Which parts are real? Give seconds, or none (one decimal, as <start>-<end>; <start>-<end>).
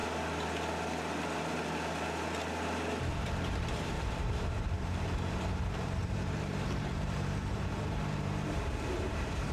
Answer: 0.0-3.6